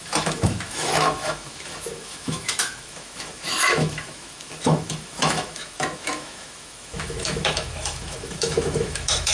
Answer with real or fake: fake